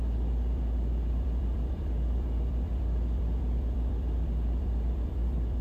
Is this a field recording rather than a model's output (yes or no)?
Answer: no